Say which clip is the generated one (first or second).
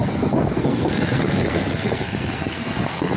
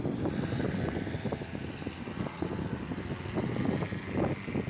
first